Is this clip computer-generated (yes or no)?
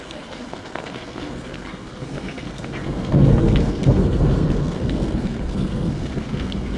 yes